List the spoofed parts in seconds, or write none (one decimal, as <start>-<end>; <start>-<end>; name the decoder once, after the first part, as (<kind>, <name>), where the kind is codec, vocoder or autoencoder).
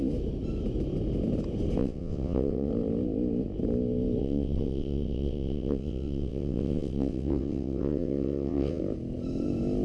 1.8-2.7 (vocoder, WaveNeXt); 4.2-8.8